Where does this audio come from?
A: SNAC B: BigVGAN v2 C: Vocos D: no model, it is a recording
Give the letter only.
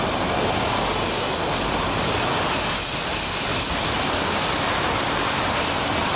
D